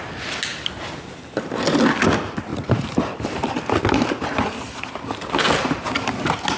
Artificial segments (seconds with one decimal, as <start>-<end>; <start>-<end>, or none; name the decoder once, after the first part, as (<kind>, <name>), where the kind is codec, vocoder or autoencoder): 2.5-3.8 (vocoder, BigVGAN v2)